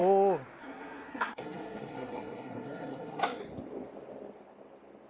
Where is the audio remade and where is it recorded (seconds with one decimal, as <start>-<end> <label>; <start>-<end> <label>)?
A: 0.0-0.6 recorded; 0.6-3.4 remade; 3.4-5.1 recorded